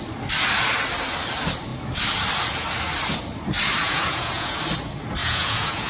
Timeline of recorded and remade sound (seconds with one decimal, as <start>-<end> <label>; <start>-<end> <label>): 0.0-3.8 recorded; 3.8-4.6 remade; 4.6-5.2 recorded; 5.2-5.9 remade